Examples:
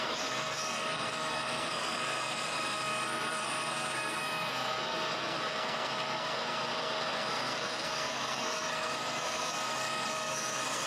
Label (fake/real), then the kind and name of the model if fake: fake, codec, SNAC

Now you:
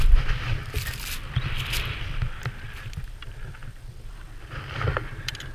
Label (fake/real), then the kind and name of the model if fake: fake, vocoder, BigVGAN v2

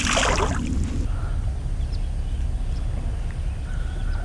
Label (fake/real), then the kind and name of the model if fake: real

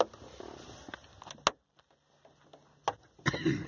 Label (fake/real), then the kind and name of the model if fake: real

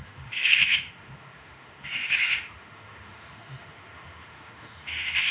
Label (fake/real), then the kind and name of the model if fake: fake, autoencoder, DAC-VAE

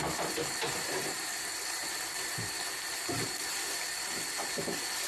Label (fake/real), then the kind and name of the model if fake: fake, vocoder, BigVGAN v2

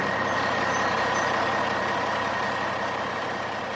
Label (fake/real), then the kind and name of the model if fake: real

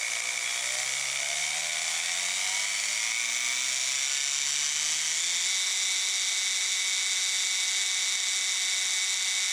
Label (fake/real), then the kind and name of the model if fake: real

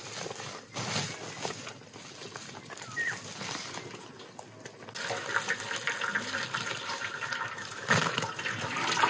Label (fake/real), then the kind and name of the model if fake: real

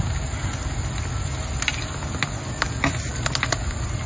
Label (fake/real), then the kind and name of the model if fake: real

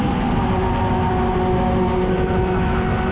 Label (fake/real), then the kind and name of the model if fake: real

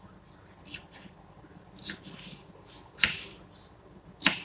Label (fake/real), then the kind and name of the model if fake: real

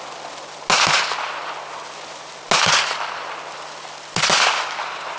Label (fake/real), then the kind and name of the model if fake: real